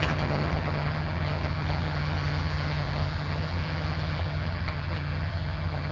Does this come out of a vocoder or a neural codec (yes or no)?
yes